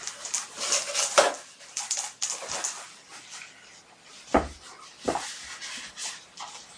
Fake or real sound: real